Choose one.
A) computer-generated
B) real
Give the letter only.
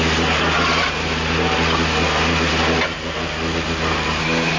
B